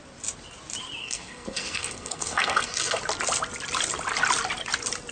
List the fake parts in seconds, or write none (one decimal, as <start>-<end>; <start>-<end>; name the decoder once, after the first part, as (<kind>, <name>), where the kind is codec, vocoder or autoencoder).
1.0-3.0 (codec, SNAC)